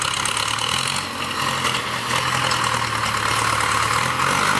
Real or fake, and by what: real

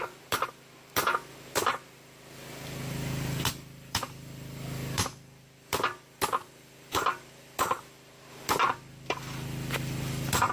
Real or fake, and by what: fake, vocoder, BigVGAN v2